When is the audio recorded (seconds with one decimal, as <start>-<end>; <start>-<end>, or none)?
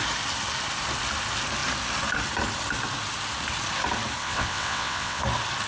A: 0.0-4.2; 5.2-5.7